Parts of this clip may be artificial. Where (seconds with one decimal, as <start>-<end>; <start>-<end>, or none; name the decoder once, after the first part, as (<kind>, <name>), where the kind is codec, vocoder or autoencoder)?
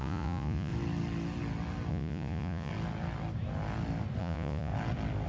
0.0-0.7 (vocoder, Vocos); 1.9-2.7; 4.2-4.7